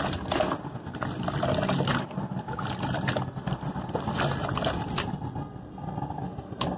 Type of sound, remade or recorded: remade